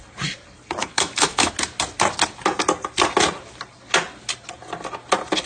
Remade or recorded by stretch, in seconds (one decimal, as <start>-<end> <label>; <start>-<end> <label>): 0.0-0.8 recorded; 0.8-1.5 remade; 1.5-5.5 recorded